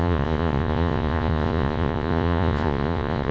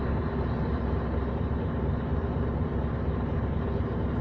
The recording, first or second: second